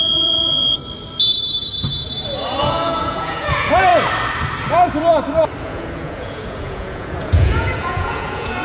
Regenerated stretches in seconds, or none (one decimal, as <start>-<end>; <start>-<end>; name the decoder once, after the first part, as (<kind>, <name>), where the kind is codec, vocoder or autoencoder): 0.0-0.8 (vocoder, Vocos); 2.6-3.9; 5.6-8.6